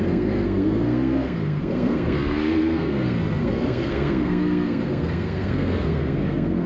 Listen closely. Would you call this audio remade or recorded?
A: remade